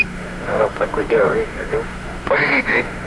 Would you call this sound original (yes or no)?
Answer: no